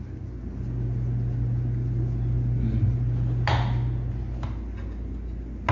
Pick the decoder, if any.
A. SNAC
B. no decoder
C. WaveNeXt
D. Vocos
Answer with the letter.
B